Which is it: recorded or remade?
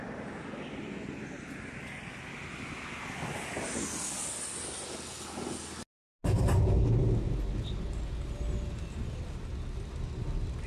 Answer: recorded